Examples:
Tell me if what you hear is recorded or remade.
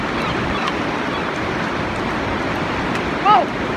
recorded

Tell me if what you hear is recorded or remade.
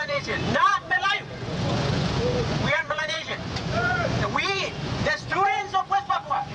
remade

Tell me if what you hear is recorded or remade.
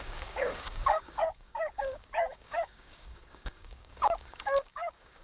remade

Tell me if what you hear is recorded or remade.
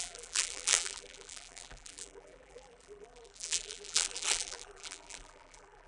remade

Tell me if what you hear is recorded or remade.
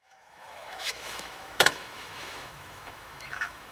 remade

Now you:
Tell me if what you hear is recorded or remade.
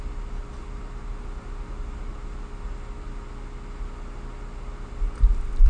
recorded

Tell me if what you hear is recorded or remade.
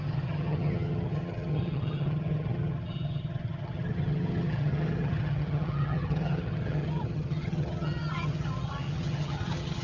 remade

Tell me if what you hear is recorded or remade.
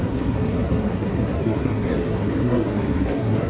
remade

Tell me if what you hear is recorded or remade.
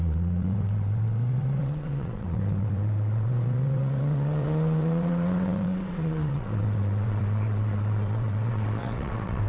remade